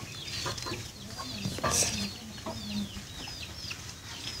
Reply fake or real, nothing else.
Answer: real